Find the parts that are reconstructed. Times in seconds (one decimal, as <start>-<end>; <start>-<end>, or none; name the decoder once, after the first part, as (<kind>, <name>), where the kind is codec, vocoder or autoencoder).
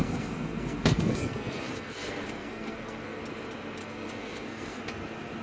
0.0-3.2 (codec, SNAC); 3.8-4.8